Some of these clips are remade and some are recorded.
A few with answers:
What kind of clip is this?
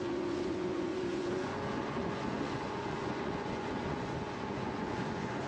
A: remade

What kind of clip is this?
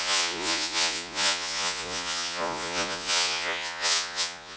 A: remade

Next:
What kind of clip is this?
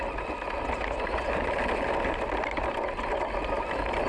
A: recorded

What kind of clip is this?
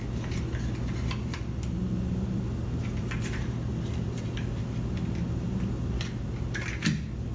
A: recorded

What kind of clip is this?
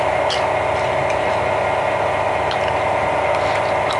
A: recorded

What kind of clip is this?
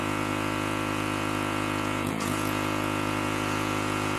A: remade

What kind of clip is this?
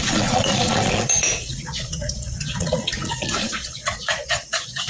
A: remade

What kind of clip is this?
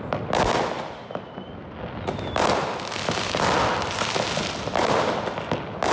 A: recorded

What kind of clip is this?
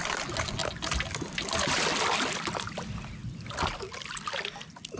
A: recorded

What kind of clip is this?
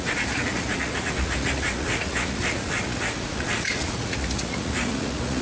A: remade